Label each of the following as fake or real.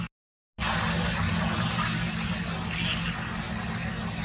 real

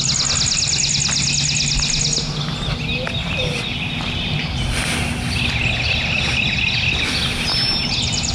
real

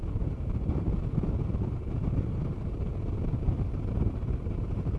fake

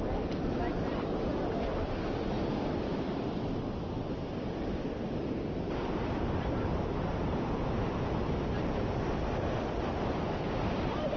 fake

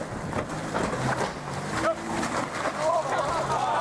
real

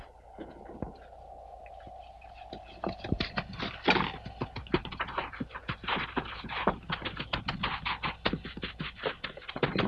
real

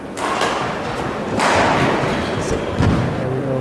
real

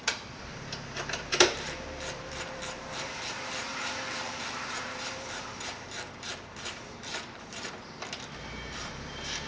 fake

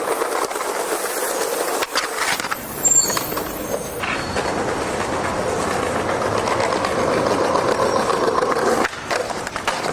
real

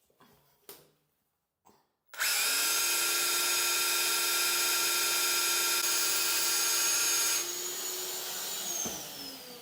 real